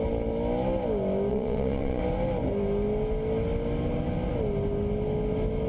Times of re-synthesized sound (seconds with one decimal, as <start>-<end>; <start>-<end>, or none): 1.3-2.0